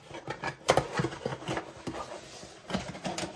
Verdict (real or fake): real